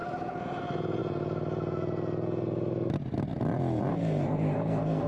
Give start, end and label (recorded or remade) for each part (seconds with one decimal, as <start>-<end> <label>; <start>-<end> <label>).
0.0-3.9 recorded; 3.9-5.1 remade